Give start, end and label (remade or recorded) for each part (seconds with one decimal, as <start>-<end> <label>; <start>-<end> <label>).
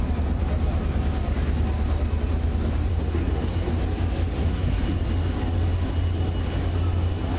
0.0-2.9 recorded; 2.9-3.7 remade; 3.7-4.4 recorded; 4.4-5.0 remade; 5.0-7.4 recorded